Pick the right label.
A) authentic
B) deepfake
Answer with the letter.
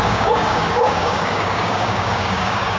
B